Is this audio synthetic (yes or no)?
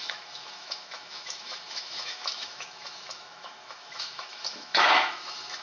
yes